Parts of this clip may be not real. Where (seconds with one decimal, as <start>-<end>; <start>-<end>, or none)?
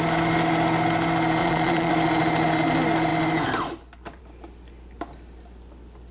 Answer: 1.4-1.9